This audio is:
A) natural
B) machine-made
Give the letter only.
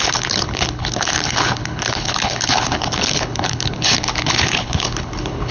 B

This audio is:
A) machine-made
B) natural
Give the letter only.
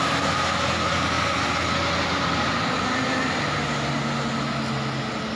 B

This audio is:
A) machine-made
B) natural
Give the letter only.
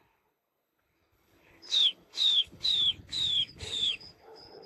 A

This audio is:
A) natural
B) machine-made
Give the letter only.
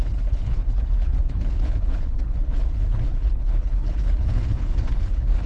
B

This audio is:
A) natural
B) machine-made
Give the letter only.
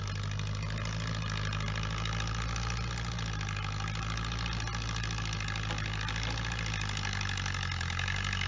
A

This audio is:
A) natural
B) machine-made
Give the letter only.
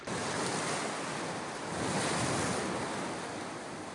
A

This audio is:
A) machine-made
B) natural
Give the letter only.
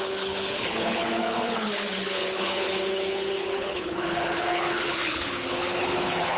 A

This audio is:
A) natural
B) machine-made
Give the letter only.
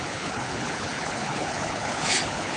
B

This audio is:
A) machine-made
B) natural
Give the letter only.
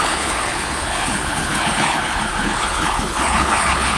A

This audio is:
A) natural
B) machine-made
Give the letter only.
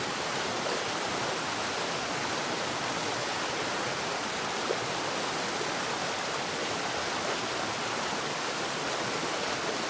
A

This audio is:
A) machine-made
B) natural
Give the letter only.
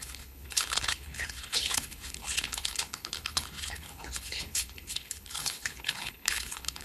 A